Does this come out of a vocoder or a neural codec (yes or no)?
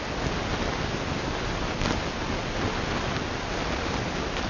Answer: no